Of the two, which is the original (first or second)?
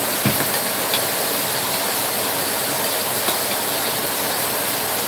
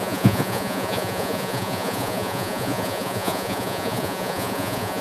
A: first